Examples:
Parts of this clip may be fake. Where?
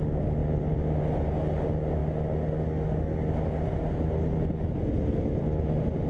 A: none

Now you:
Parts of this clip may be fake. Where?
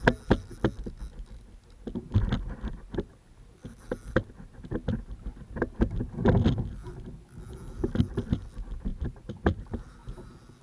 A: 8.9-9.6 (vocoder, BigVGAN v2)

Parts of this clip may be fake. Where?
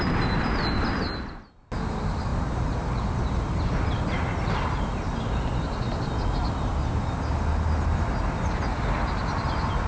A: none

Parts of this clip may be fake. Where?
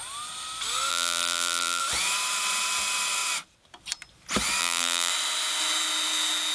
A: 0.9-1.8 (vocoder, BigVGAN v2); 4.6-5.1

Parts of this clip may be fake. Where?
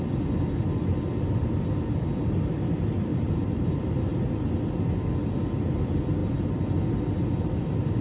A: 3.1-4.3 (vocoder, BigVGAN v2)